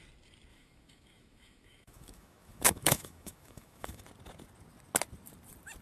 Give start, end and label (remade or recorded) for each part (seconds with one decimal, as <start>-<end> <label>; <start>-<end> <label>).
0.0-0.5 recorded; 0.5-4.0 remade; 4.0-5.8 recorded

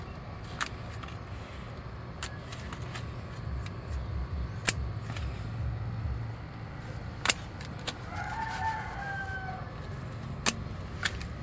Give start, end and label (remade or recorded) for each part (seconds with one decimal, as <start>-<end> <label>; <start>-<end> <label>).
0.0-11.4 recorded

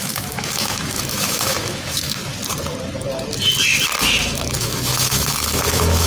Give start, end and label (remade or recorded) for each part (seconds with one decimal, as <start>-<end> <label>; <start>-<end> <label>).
0.0-2.2 remade; 2.2-4.0 recorded; 4.0-6.1 remade

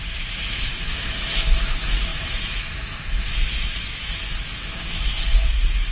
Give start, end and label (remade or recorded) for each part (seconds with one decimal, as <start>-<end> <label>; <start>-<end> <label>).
0.0-5.9 remade

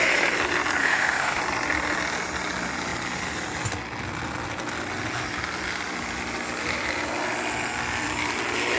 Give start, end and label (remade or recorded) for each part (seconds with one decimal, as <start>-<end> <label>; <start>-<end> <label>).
0.0-0.8 recorded; 0.8-1.4 remade; 1.4-8.8 recorded